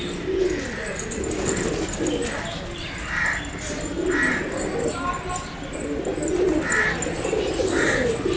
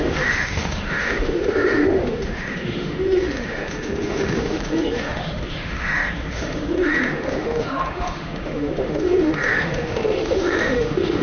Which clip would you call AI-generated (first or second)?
second